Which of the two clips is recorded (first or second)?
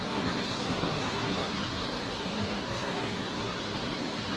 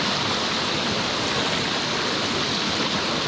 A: second